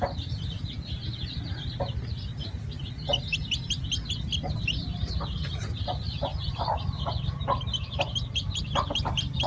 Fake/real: real